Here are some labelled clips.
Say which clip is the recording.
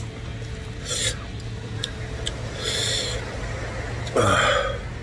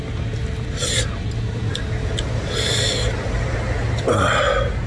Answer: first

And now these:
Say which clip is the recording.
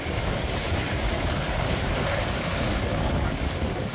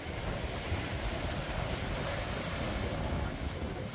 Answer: second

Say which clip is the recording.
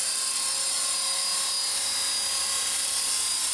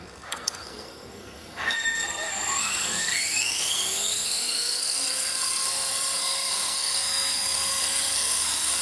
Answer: first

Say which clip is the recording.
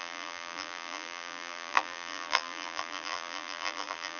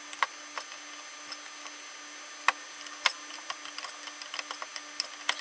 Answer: second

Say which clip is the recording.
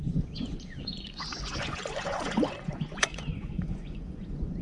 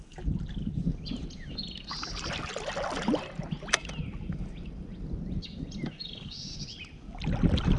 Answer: second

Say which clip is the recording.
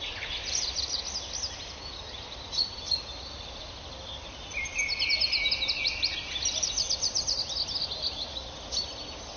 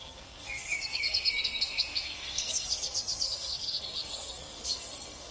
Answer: first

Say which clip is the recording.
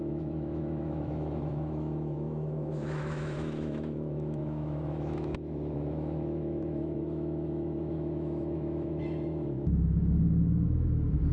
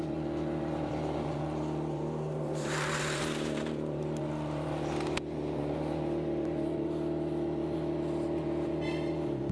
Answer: second